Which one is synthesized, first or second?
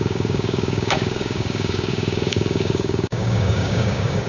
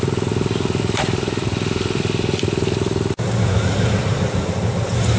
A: first